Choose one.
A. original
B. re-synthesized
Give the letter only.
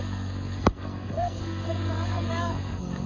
B